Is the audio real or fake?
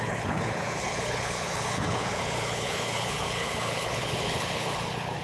fake